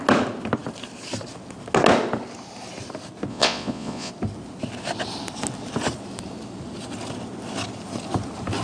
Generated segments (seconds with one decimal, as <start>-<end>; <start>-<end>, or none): 3.3-4.1